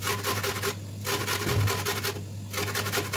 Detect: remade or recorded recorded